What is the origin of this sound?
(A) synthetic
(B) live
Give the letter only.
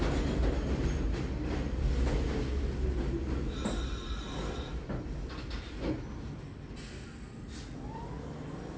B